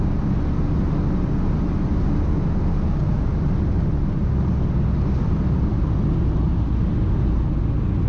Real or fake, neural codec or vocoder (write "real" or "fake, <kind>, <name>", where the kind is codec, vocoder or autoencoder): real